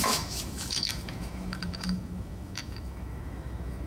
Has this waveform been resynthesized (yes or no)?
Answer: yes